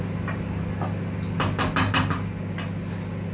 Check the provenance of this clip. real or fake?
real